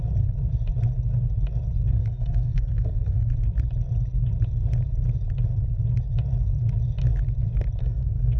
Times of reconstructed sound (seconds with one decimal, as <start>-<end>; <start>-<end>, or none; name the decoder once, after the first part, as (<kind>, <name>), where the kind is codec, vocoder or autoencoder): 2.0-3.3 (codec, SNAC); 7.8-8.4